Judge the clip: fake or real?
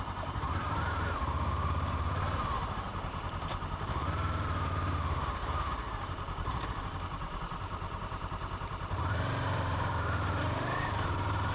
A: fake